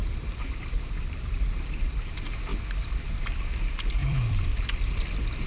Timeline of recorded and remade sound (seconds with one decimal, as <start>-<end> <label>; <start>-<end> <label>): 0.0-4.0 recorded; 4.0-5.1 remade; 5.1-5.5 recorded